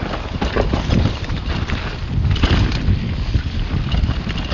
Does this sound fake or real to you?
real